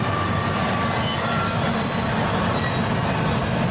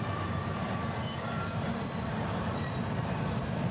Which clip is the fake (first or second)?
second